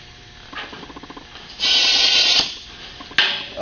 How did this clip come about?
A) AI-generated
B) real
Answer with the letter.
B